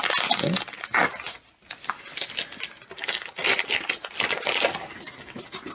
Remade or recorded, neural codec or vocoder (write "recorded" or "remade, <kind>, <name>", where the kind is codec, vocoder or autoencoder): recorded